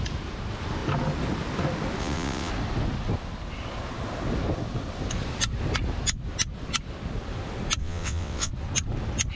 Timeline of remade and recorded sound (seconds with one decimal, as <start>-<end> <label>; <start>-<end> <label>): 0.0-2.0 recorded; 2.0-2.5 remade; 2.5-7.8 recorded; 7.8-8.5 remade; 8.5-9.4 recorded